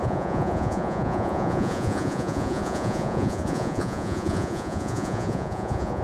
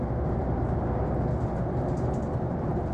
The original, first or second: second